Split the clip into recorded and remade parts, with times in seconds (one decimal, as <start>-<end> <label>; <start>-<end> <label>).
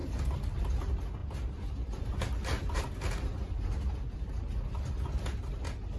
0.0-6.0 recorded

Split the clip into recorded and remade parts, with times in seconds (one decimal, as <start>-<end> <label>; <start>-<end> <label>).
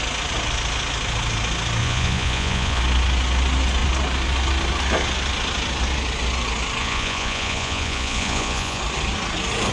0.0-1.8 recorded; 1.8-2.8 remade; 2.8-6.8 recorded; 6.8-8.8 remade; 8.8-9.7 recorded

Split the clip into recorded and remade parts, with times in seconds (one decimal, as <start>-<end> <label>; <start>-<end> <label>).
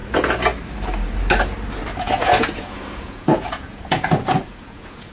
0.0-2.0 recorded; 2.0-5.1 remade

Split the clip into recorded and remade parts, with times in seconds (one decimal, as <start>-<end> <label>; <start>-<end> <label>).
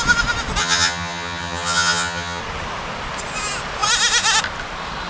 0.0-0.6 recorded; 0.6-2.4 remade; 2.4-5.1 recorded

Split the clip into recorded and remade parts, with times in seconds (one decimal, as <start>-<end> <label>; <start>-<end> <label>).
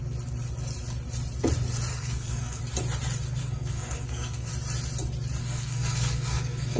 0.0-1.9 recorded; 1.9-2.6 remade; 2.6-3.4 recorded; 3.4-4.5 remade; 4.5-5.4 recorded; 5.4-6.8 remade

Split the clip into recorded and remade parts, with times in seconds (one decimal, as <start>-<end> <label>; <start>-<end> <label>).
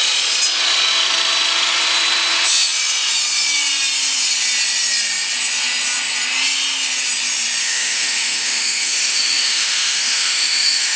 0.0-7.6 recorded; 7.6-11.0 remade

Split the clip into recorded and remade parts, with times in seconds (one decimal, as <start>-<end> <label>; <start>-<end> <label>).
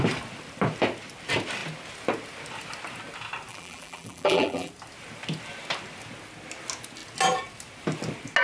0.0-3.5 recorded; 3.5-4.7 remade; 4.7-8.4 recorded